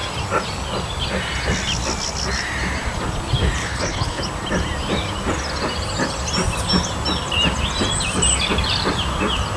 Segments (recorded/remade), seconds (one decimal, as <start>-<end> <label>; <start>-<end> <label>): 0.0-3.6 recorded; 3.6-4.2 remade; 4.2-9.6 recorded